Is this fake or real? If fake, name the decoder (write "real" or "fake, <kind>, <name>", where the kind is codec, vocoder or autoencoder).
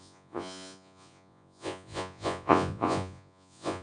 fake, vocoder, Vocos